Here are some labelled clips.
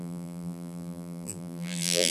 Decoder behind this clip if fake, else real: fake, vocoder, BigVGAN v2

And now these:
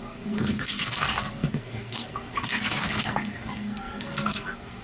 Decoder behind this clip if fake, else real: fake, codec, SNAC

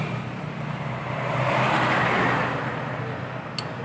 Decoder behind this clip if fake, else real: real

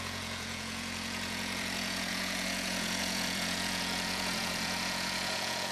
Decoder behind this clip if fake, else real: fake, vocoder, Vocos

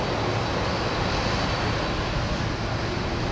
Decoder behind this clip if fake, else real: real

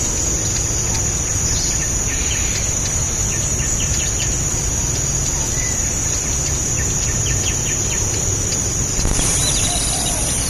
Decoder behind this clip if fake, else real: real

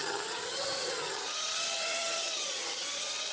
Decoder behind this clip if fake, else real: fake, vocoder, HiFi-GAN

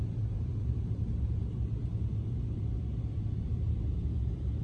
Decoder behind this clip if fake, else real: fake, vocoder, BigVGAN v2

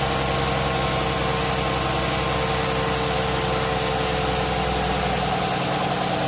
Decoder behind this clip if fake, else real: real